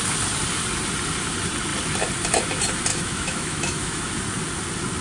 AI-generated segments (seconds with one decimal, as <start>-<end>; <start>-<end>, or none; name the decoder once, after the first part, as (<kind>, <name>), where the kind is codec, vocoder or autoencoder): 2.9-4.1 (autoencoder, DAC-VAE)